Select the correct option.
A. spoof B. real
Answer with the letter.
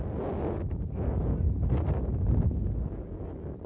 B